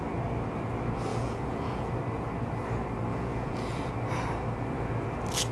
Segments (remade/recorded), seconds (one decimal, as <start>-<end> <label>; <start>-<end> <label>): 0.0-1.1 recorded; 1.1-1.9 remade; 1.9-3.1 recorded; 3.1-3.9 remade; 3.9-5.5 recorded